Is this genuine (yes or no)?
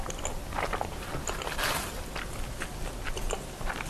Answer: yes